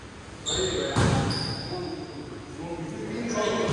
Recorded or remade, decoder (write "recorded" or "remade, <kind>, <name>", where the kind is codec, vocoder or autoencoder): recorded